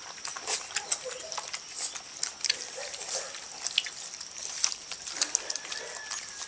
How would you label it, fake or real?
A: real